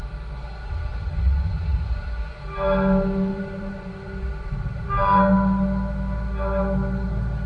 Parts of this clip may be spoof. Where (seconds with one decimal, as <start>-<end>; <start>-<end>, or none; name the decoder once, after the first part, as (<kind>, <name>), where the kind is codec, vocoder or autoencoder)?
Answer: 0.9-1.9 (vocoder, BigVGAN v2); 3.3-4.9